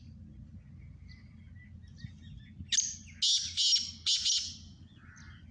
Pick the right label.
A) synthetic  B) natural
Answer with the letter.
B